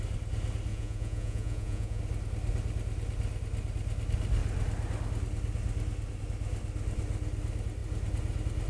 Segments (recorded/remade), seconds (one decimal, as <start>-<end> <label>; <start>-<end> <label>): 0.0-0.7 recorded; 0.7-2.0 remade; 2.0-8.7 recorded